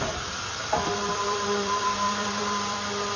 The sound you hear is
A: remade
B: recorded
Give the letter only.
A